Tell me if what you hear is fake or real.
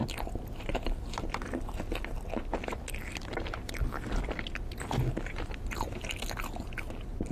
real